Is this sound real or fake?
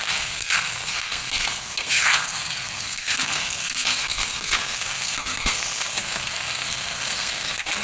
fake